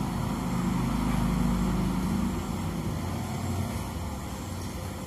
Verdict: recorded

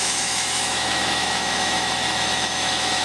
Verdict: remade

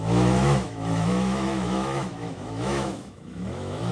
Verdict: remade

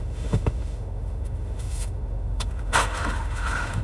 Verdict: remade